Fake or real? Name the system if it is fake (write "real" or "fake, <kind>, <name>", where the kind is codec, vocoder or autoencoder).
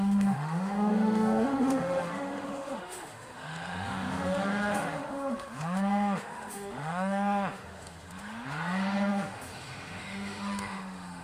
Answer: fake, autoencoder, DAC-VAE